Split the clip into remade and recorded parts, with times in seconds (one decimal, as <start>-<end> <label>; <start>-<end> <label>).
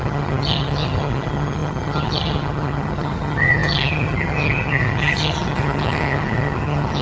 0.0-7.0 remade